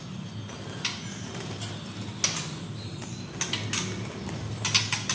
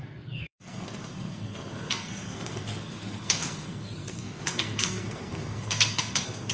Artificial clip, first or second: second